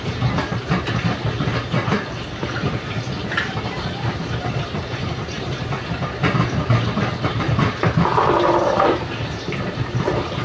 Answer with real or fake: fake